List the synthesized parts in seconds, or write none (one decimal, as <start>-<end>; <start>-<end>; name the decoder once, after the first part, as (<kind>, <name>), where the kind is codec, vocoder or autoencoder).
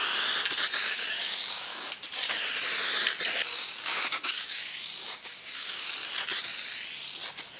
0.8-2.0 (codec, DAC); 3.5-5.9